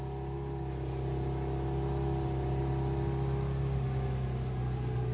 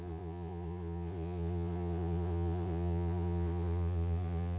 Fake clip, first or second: second